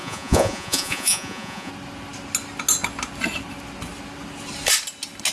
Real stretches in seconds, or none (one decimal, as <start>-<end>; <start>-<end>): 1.7-5.3